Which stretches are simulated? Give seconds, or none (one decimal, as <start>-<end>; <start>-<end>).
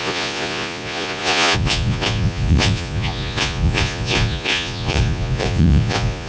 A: 0.0-6.3